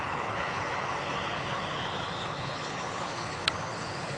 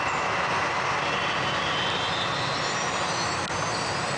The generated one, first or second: first